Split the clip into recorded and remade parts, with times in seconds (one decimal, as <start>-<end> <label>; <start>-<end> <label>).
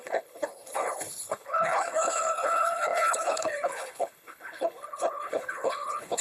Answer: 0.0-6.2 remade